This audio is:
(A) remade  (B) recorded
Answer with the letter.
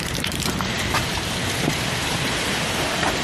A